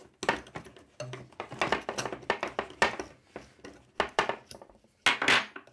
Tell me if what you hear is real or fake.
real